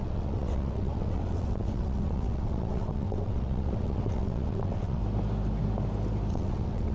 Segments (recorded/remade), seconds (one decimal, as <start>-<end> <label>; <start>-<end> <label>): 0.0-5.0 remade; 5.0-6.3 recorded; 6.3-6.9 remade